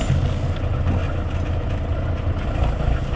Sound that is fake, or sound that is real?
real